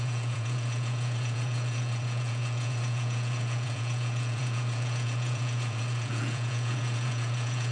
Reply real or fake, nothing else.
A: fake